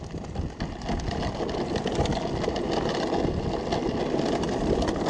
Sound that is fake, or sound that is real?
real